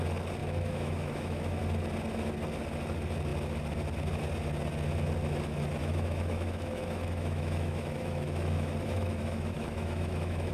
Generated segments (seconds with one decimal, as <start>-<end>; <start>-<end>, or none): 0.4-1.6; 5.8-10.5